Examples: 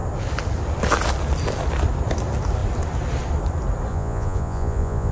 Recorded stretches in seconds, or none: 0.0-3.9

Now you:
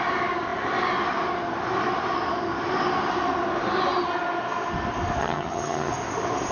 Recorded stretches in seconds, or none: 0.0-5.2; 5.9-6.5

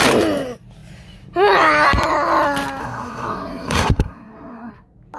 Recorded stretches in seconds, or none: 0.0-2.8; 4.7-5.2

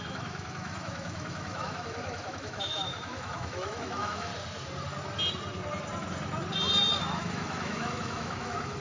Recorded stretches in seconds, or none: 4.3-7.0

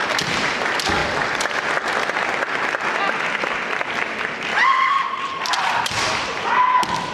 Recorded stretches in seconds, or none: 0.5-4.5; 5.5-7.1

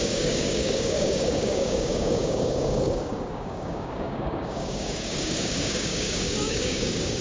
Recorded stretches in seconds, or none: none

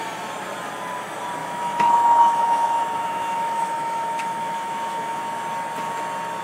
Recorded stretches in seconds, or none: 0.0-1.4; 5.2-6.4

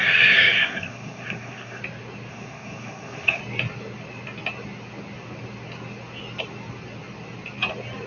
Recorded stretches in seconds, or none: 1.8-2.3; 3.4-8.1